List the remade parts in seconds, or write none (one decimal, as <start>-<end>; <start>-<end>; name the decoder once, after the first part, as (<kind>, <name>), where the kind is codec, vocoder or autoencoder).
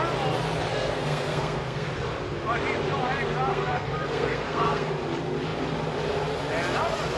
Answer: 0.7-1.9 (codec, SNAC); 3.5-4.9